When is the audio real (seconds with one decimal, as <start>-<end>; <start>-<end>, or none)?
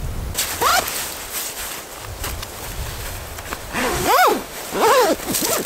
0.0-3.8; 4.6-5.7